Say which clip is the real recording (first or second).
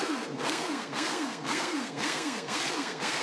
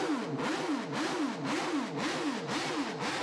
second